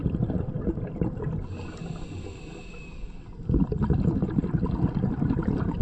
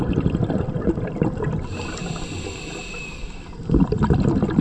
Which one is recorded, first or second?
first